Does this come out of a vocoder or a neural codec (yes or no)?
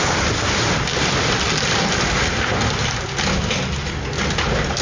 no